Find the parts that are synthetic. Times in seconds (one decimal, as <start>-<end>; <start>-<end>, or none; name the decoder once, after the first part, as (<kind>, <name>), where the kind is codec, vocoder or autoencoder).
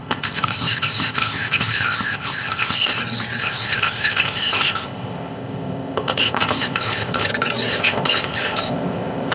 0.0-3.0 (codec, ZipCodec); 3.4-7.3; 7.7-9.3